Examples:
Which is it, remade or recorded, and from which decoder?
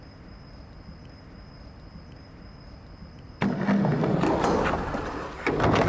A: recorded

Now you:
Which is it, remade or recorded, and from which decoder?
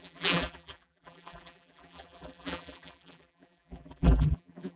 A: remade, vocoder, BigVGAN v2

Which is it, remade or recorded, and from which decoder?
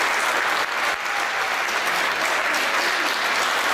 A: recorded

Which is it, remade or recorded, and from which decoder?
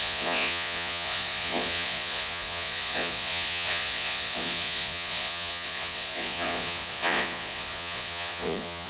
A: remade, vocoder, Vocos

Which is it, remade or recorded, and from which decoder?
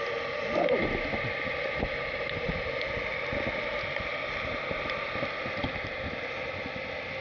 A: recorded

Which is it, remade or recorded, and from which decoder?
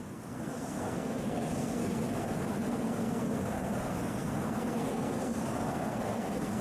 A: remade, codec, SNAC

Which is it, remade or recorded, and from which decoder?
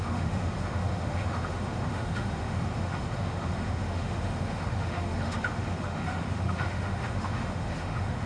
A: remade, autoencoder, DAC-VAE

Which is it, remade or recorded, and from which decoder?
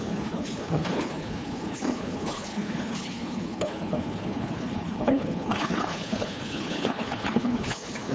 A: remade, codec, HILCodec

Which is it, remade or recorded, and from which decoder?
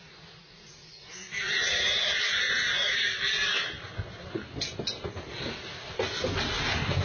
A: recorded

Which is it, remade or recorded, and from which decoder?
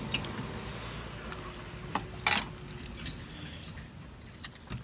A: recorded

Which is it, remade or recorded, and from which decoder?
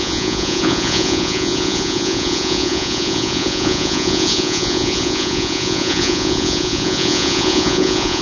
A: remade, vocoder, Vocos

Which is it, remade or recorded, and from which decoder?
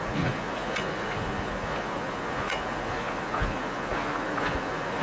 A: remade, vocoder, Vocos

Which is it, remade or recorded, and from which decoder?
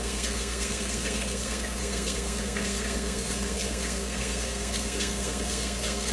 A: remade, codec, SNAC